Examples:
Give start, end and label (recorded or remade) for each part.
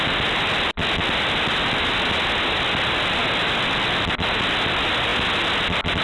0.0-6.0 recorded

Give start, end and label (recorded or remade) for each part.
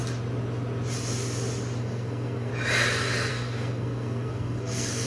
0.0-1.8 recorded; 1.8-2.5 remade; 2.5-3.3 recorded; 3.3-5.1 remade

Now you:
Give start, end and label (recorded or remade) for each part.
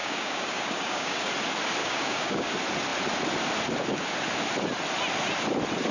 0.0-1.3 remade; 1.3-1.8 recorded; 1.8-2.5 remade; 2.5-5.9 recorded